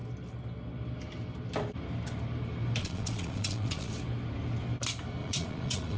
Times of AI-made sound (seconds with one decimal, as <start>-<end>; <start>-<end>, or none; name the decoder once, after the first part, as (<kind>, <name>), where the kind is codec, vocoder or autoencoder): 2.8-3.9 (vocoder, Vocos); 5.2-6.0